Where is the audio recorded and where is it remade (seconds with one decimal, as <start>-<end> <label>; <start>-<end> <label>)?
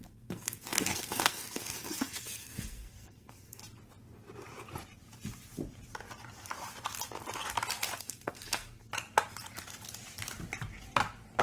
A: 0.0-3.6 remade; 3.6-8.0 recorded; 8.0-8.9 remade; 8.9-11.4 recorded